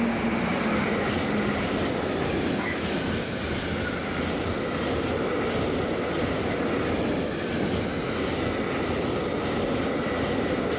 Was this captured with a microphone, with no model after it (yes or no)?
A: yes